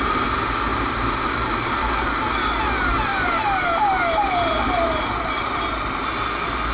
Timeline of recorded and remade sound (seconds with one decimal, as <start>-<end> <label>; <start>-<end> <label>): 0.0-0.7 recorded; 0.7-1.7 remade; 1.7-3.1 recorded; 3.1-5.0 remade; 5.0-6.7 recorded